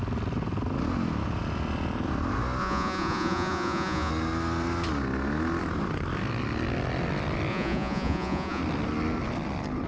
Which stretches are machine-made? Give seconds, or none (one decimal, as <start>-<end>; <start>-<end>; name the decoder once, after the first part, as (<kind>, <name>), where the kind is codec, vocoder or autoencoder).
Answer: 2.6-4.1 (vocoder, Vocos); 7.5-8.6